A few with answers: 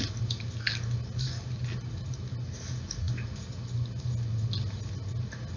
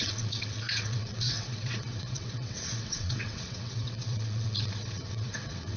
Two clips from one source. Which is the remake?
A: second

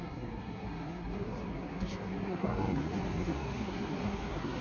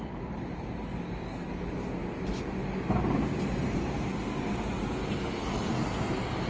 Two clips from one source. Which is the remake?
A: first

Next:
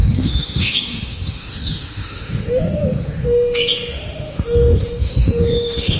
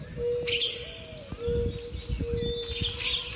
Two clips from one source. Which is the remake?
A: first